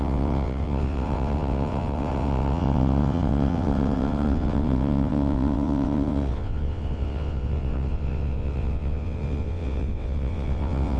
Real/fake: fake